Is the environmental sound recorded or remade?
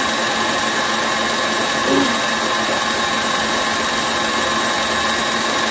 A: recorded